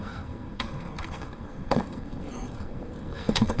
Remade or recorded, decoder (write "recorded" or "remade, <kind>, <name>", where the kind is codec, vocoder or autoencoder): remade, codec, SNAC